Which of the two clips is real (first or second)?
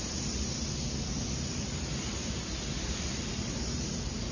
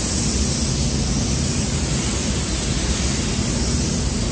second